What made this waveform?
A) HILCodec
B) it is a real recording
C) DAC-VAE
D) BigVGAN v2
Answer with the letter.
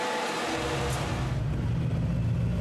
B